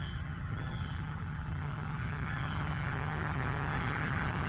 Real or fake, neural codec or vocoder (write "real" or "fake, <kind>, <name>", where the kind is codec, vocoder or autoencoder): fake, vocoder, HiFi-GAN